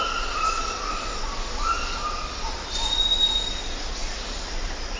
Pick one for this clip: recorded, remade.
recorded